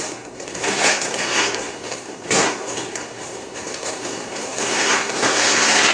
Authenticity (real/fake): fake